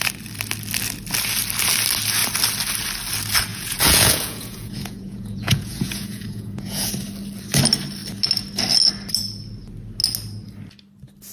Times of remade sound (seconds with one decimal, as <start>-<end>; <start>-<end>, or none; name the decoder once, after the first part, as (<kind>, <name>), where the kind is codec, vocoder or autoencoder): 3.5-6.9 (vocoder, Vocos)